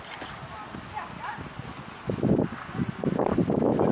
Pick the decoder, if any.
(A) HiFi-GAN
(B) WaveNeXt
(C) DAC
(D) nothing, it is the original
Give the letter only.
D